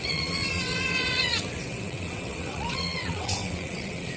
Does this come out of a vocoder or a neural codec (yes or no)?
yes